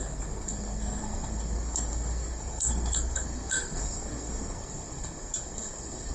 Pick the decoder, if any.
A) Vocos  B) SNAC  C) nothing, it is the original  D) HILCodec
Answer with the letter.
B